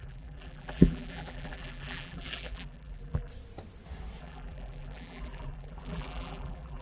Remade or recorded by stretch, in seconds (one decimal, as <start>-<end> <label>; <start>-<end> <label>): 0.0-3.3 remade; 3.3-4.2 recorded; 4.2-6.8 remade